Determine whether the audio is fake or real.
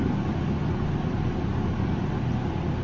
real